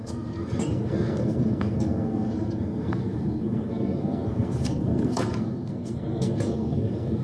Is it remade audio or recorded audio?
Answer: remade